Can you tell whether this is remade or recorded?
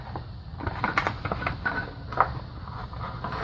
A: recorded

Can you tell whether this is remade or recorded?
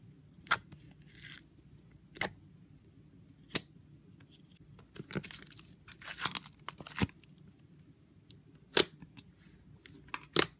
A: recorded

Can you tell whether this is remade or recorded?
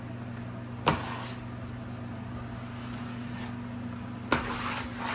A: recorded